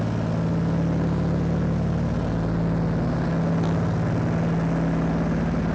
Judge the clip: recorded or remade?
recorded